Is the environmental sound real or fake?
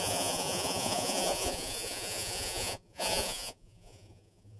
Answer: fake